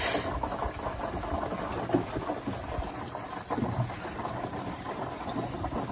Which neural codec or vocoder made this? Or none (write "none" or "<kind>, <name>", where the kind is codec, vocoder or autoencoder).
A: none